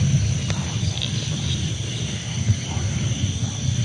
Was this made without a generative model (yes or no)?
yes